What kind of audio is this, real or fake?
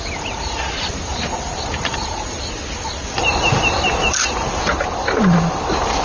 real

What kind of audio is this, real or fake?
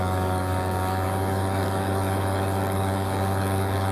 fake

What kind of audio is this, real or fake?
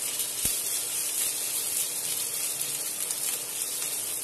real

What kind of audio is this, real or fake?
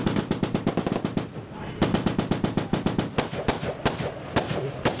real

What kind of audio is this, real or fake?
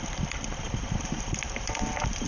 real